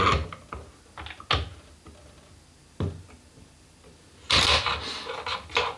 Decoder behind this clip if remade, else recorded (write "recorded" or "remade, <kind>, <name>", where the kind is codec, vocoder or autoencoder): recorded